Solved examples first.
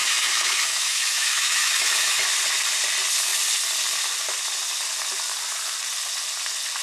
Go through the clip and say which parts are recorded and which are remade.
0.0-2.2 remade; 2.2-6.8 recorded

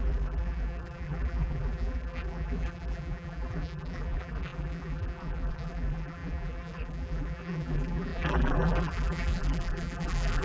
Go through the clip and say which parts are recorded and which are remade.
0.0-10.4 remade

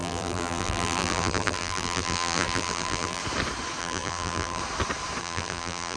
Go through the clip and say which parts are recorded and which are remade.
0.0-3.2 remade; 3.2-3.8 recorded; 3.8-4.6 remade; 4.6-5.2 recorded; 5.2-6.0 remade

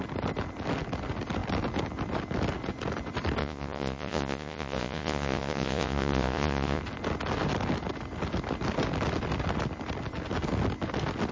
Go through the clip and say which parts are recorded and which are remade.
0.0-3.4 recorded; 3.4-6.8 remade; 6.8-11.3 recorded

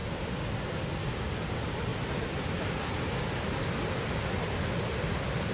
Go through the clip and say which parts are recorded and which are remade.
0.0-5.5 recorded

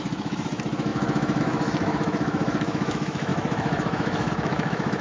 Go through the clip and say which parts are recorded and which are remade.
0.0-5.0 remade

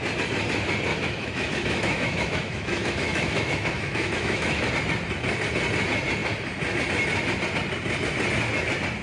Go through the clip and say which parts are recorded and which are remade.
0.0-0.9 recorded; 0.9-4.7 remade; 4.7-9.0 recorded